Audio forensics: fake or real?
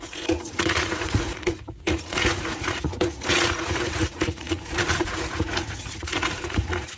fake